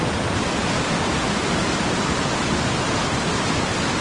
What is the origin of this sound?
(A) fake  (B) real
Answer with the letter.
B